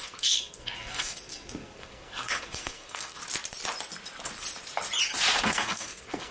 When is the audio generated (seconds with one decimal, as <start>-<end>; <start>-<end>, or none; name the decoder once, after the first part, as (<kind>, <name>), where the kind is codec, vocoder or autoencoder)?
0.0-3.2 (codec, SNAC); 5.4-6.3